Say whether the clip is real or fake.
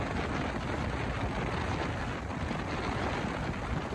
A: real